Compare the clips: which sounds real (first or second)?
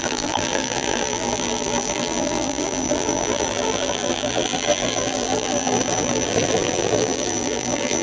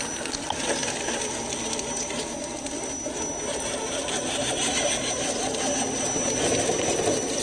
second